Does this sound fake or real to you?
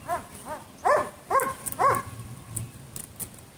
real